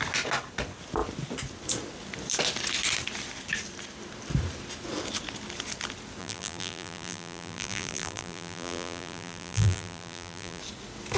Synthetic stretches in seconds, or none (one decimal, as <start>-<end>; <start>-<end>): 6.2-10.6